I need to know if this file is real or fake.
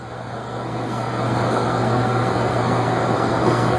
fake